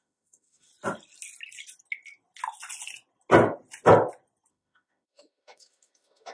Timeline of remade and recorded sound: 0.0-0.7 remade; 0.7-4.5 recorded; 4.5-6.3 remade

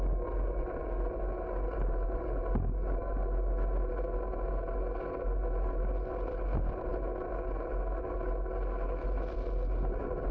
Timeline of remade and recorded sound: 0.0-10.3 recorded

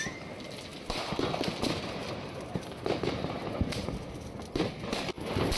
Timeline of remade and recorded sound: 0.0-5.6 recorded